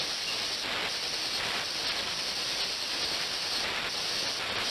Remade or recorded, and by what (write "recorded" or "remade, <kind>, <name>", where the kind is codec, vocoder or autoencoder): recorded